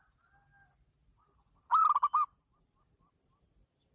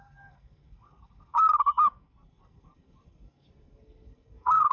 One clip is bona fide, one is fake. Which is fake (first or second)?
second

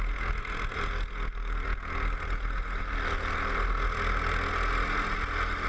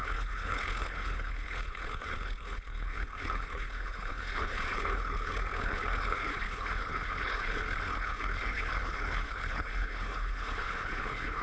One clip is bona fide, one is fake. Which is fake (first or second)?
second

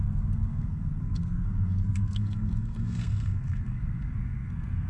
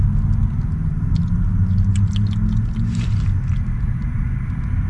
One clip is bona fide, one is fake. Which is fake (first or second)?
first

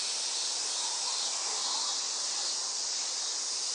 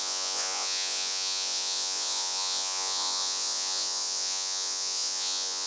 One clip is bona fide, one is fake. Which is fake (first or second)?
second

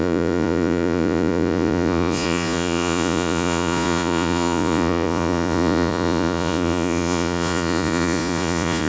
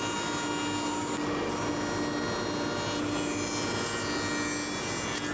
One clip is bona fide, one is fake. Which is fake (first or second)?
first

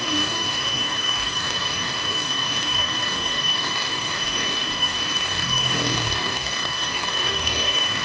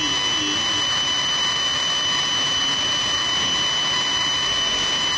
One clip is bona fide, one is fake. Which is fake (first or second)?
first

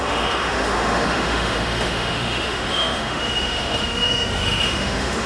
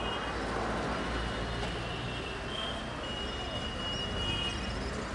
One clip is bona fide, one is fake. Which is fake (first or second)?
first